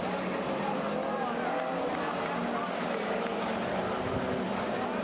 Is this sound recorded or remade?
recorded